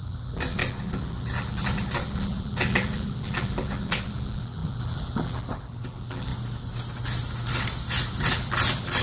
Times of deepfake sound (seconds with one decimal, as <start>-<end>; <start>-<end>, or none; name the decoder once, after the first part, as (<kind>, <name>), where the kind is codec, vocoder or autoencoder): 0.0-6.3 (vocoder, BigVGAN v2); 8.2-9.0